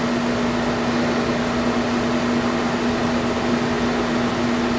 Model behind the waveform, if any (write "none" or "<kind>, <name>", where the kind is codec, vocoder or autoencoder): none